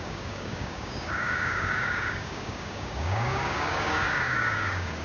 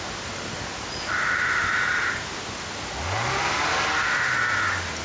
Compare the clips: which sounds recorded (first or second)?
second